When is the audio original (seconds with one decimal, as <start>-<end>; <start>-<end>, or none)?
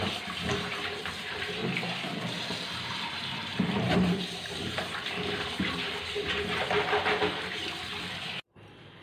6.6-9.0